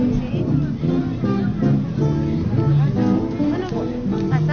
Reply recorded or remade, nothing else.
recorded